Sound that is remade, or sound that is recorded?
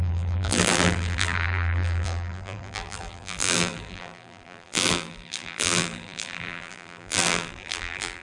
remade